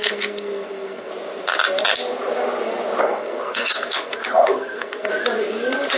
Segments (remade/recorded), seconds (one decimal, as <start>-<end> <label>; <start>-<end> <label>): 0.0-1.1 remade; 1.1-3.0 recorded; 3.0-5.1 remade; 5.1-6.0 recorded